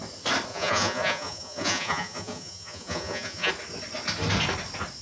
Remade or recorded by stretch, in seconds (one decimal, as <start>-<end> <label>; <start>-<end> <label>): 0.0-0.5 recorded; 0.5-3.5 remade; 3.5-5.0 recorded